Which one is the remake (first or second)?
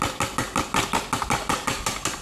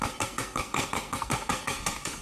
second